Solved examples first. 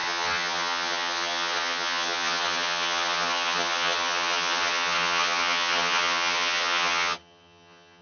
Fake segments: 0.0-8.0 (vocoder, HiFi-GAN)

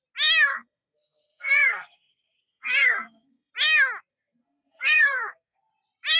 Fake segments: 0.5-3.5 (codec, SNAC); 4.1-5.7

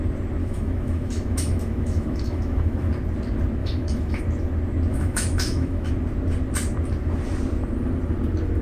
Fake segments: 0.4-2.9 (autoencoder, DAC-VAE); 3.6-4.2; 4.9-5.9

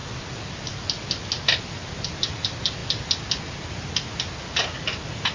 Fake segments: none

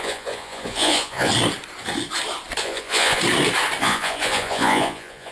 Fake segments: 0.0-1.3 (vocoder, Vocos); 2.6-3.2; 3.8-5.3

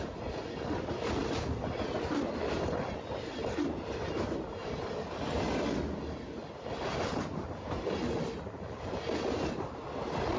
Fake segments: none

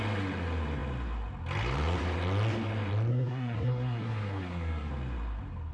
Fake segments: 3.1-4.9 (codec, SNAC)

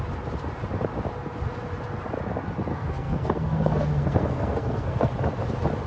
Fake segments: 2.7-5.1 (codec, SNAC)